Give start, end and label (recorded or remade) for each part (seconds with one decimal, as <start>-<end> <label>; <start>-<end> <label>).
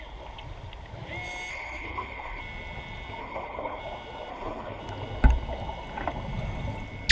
0.0-1.5 recorded; 1.5-2.4 remade; 2.4-3.2 recorded; 3.2-3.8 remade; 3.8-4.3 recorded; 4.3-4.8 remade; 4.8-7.1 recorded